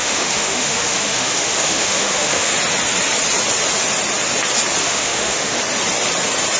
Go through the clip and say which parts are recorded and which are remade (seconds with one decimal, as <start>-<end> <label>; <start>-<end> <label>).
0.0-2.5 remade; 2.5-4.8 recorded; 4.8-5.6 remade; 5.6-6.6 recorded